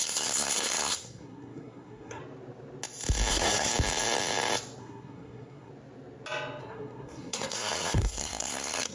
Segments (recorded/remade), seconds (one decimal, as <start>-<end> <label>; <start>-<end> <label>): 0.0-2.2 remade; 2.2-3.3 recorded; 3.3-3.7 remade; 3.7-4.8 recorded; 4.8-5.7 remade; 5.7-6.6 recorded; 6.6-8.9 remade